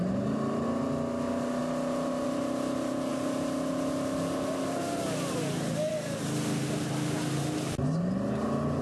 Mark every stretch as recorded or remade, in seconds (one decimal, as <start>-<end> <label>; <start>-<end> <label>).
0.0-8.8 recorded